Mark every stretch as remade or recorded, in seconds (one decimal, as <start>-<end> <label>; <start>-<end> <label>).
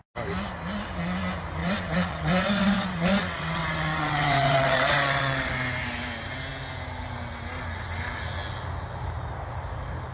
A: 0.0-1.6 recorded; 1.6-5.5 remade; 5.5-10.1 recorded